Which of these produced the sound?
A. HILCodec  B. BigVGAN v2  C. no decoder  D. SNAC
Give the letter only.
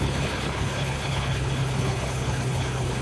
A